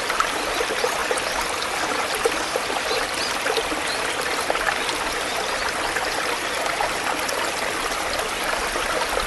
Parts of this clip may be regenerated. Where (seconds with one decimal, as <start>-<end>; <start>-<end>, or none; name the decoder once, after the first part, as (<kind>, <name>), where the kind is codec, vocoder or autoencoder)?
none